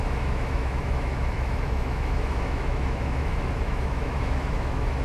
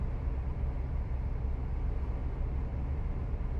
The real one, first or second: second